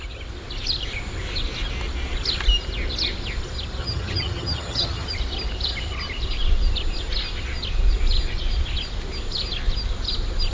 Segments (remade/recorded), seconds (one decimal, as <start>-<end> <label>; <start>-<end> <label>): 0.0-3.8 recorded; 3.8-5.1 remade; 5.1-10.5 recorded